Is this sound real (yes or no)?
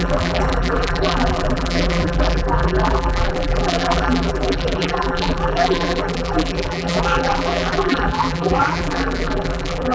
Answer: no